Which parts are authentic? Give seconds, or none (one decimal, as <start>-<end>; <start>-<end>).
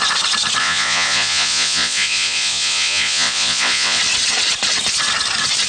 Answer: 0.0-0.6; 4.0-5.7